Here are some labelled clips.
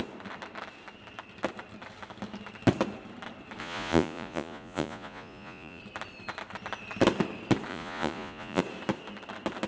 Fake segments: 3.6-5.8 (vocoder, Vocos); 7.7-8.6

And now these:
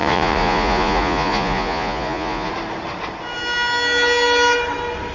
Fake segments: 0.0-2.5 (vocoder, Vocos)

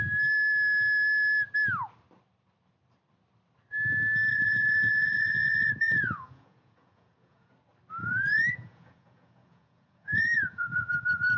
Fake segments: 4.3-7.5 (vocoder, Vocos); 8.0-11.4

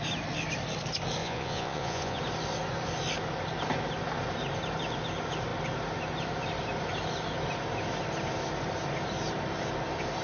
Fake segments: 1.2-2.2 (vocoder, Vocos)

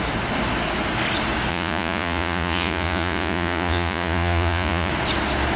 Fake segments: 1.5-4.9 (vocoder, Vocos)

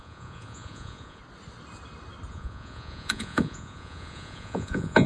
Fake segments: 0.0-1.2 (vocoder, Vocos); 2.3-5.1

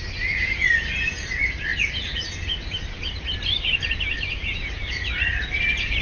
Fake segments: none